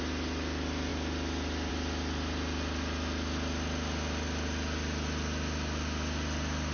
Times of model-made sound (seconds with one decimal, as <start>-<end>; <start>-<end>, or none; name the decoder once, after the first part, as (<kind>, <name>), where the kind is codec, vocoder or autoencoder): none